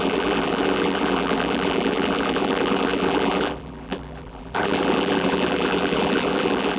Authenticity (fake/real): fake